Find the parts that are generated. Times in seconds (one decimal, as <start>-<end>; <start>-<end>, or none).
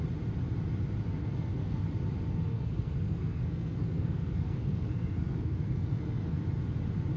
1.2-1.8; 2.5-6.4